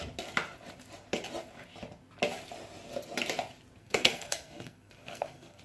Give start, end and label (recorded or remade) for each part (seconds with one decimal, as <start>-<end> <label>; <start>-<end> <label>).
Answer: 0.0-3.8 recorded; 3.8-5.6 remade